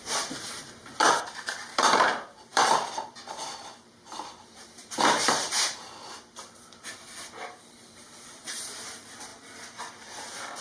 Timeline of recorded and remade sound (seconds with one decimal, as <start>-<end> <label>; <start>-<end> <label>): 0.0-9.3 remade; 9.3-9.9 recorded; 9.9-10.6 remade